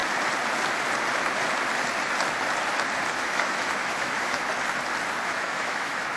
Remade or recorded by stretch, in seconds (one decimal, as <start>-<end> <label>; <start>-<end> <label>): 0.0-3.1 recorded; 3.1-4.5 remade; 4.5-5.2 recorded; 5.2-6.2 remade